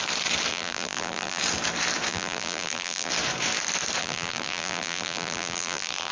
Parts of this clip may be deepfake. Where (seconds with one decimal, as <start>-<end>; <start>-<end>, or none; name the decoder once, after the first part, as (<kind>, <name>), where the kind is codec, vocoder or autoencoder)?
0.5-1.4 (vocoder, BigVGAN v2); 2.1-3.1; 4.0-6.1

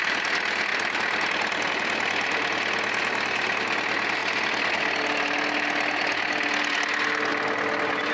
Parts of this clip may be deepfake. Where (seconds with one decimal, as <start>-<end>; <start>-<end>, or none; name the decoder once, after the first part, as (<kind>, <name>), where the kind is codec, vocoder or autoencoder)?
none